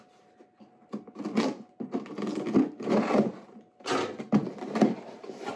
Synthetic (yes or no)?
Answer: no